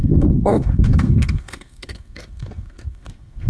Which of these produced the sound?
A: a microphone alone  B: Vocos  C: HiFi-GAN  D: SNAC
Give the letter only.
D